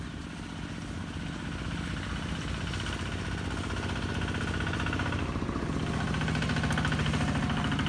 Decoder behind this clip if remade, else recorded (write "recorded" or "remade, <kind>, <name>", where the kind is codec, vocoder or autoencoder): recorded